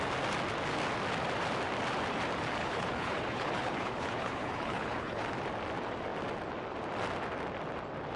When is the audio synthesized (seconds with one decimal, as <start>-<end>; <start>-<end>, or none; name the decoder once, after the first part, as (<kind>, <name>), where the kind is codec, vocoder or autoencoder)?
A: 2.6-5.2 (codec, HILCodec)